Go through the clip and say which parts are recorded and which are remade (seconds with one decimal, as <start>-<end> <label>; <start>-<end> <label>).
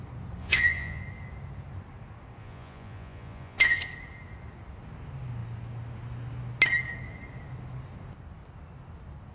0.0-0.4 recorded; 0.4-1.0 remade; 1.0-2.4 recorded; 2.4-3.8 remade; 3.8-9.3 recorded